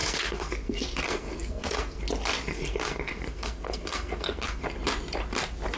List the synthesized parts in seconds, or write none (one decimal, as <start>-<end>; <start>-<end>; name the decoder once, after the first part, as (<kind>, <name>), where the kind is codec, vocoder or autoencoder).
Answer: 0.0-2.0 (codec, SNAC); 2.5-4.6